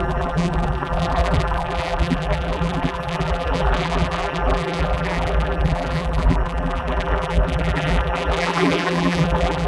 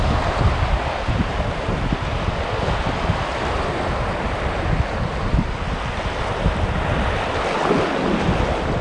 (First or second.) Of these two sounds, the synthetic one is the first